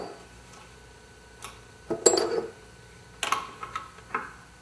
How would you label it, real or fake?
real